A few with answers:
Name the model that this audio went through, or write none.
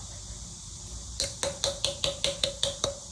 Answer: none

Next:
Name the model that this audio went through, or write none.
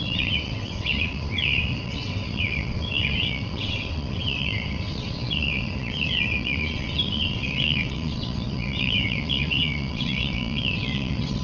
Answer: vocoder, WaveNeXt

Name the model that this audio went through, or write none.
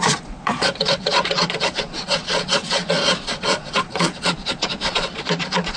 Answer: vocoder, Vocos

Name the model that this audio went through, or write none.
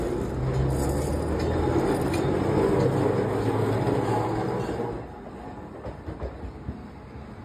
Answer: none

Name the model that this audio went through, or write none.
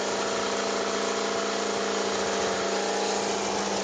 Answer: none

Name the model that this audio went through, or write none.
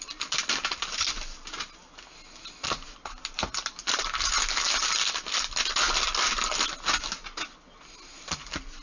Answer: none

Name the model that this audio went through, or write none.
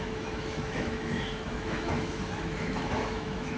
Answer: autoencoder, DAC-VAE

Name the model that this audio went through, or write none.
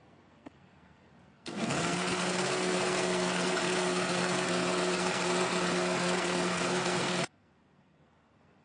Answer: codec, SNAC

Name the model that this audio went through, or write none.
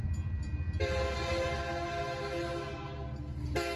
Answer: none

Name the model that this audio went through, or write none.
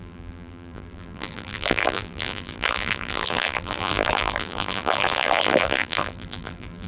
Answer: vocoder, BigVGAN v2